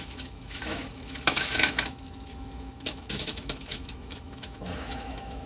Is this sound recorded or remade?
remade